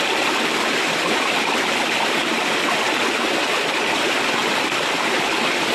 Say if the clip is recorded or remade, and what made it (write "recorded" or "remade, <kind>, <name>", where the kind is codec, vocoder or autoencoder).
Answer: remade, vocoder, BigVGAN v2